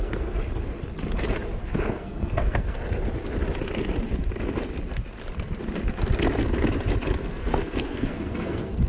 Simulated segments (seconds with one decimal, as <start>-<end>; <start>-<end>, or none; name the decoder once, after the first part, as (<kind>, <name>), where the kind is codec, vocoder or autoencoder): 0.0-0.4 (codec, SNAC); 1.6-2.8; 7.2-8.9